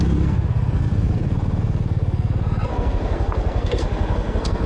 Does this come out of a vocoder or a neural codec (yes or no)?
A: yes